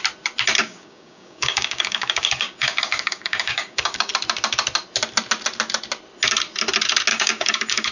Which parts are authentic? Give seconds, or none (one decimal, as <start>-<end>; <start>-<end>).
0.0-0.6; 4.1-7.1